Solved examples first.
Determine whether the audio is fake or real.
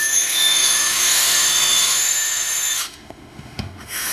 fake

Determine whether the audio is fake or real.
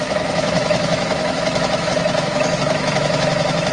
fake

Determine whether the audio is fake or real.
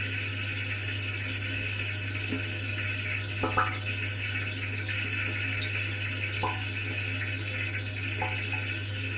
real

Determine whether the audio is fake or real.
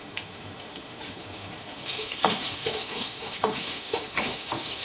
fake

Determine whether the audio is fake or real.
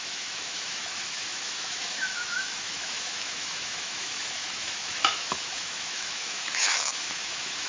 fake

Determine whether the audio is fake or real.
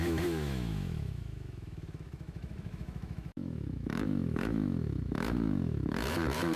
fake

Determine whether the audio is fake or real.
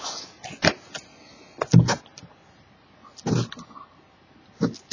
real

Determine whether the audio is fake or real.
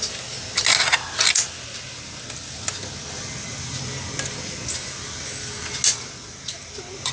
real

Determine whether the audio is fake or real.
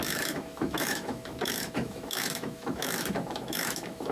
fake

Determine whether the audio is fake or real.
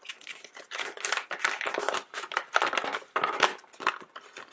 real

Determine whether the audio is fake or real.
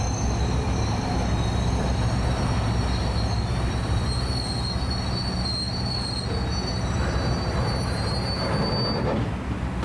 real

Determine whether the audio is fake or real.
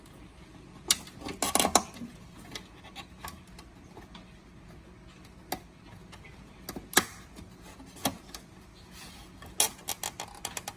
real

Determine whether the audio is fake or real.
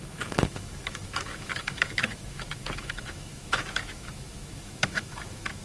fake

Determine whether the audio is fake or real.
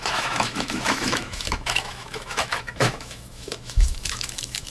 fake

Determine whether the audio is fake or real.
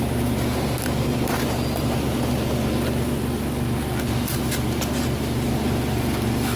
real